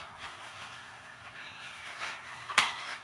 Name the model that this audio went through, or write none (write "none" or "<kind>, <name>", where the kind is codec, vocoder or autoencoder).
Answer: codec, SNAC